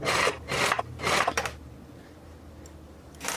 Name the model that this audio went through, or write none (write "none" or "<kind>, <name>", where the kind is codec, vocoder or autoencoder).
none